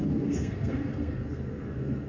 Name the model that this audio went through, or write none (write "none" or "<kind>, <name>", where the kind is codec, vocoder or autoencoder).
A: codec, SNAC